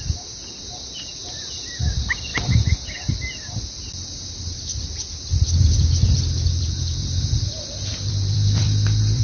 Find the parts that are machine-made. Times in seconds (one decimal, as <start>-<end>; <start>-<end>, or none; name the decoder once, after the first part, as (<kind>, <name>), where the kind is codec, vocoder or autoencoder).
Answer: 0.0-2.3 (vocoder, BigVGAN v2); 3.1-9.2